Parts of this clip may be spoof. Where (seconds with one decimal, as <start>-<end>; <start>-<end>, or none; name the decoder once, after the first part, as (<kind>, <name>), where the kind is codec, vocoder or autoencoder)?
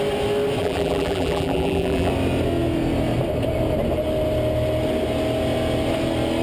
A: 0.6-2.1 (vocoder, BigVGAN v2)